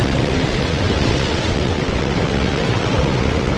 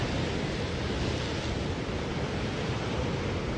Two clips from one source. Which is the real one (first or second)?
second